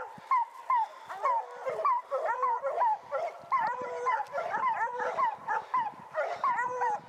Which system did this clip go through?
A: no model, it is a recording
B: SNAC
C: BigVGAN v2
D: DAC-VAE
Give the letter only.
A